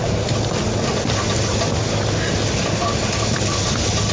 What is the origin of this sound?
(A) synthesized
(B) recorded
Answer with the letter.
B